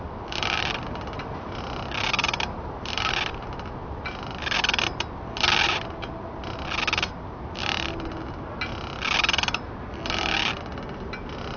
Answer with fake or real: real